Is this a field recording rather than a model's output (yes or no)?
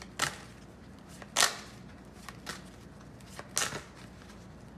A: yes